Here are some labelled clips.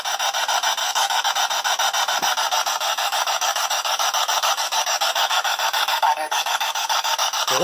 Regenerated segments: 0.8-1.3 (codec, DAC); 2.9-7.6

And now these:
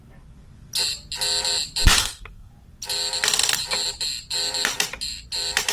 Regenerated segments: 2.0-2.5 (codec, SNAC)

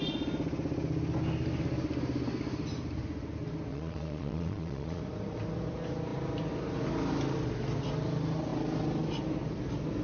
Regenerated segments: 3.7-5.0 (vocoder, Vocos)

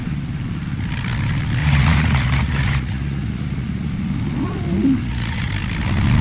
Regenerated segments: 1.6-3.9 (vocoder, Vocos); 5.0-5.5